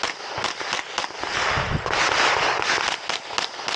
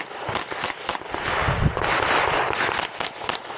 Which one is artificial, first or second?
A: second